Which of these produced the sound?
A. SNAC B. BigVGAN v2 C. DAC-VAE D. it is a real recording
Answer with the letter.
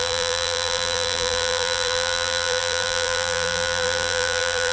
B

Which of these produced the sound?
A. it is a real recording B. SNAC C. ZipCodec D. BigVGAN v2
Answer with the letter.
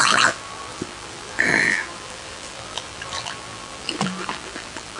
D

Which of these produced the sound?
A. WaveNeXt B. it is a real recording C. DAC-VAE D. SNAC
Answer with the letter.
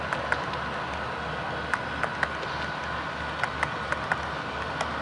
B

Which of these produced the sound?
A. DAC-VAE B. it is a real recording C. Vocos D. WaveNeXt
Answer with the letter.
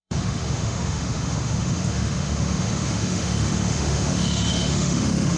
A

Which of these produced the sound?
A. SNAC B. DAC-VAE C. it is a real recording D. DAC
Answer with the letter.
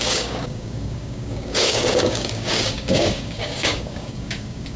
D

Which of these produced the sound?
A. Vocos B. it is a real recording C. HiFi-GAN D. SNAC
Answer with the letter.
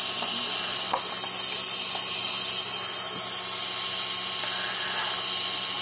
B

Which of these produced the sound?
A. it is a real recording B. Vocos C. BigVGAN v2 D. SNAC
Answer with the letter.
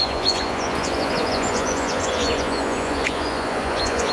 B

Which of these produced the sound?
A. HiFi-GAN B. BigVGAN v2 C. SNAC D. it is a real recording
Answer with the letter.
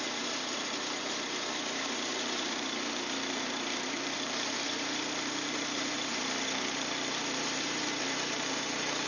B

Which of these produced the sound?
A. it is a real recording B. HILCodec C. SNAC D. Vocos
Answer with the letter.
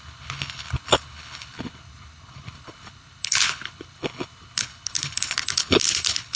B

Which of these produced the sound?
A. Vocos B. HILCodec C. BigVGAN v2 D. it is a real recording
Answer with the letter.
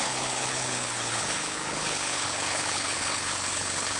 B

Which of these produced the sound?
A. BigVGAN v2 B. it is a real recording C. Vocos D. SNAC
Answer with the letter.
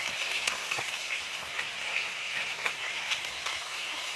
D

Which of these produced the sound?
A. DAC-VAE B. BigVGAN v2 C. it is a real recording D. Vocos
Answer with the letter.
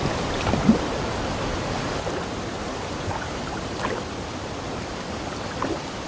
C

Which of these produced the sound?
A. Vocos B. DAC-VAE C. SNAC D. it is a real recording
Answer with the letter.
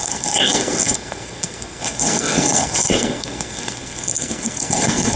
C